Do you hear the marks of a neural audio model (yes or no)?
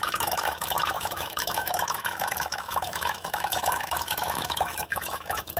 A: yes